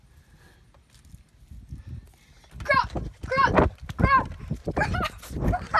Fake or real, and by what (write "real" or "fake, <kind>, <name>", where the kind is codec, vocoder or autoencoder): real